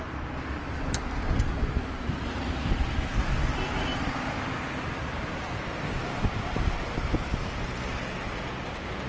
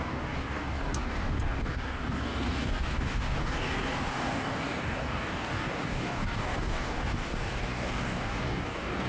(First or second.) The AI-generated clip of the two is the second